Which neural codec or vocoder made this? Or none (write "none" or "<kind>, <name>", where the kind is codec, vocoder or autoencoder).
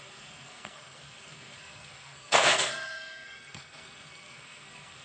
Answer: codec, SNAC